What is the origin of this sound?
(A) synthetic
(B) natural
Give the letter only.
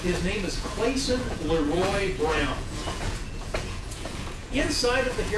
A